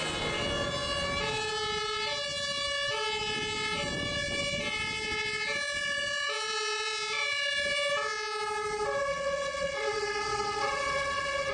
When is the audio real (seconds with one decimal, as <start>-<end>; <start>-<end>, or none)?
0.0-9.1